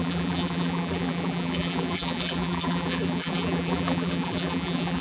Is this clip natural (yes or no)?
no